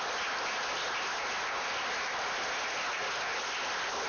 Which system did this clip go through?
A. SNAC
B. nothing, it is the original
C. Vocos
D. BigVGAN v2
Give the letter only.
B